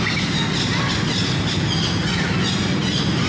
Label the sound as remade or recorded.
recorded